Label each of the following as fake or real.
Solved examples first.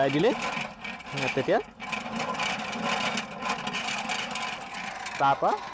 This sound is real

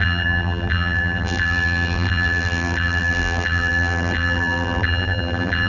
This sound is fake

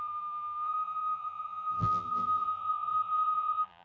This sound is fake